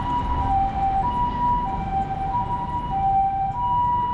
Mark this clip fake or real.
real